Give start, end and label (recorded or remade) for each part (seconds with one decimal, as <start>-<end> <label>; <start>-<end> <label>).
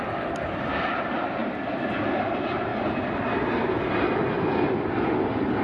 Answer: 0.0-1.4 remade; 1.4-2.2 recorded; 2.2-2.7 remade; 2.7-5.6 recorded